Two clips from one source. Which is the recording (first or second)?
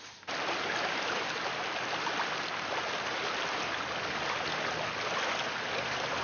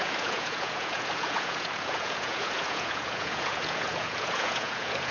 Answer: first